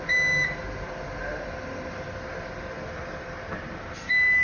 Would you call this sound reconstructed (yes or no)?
no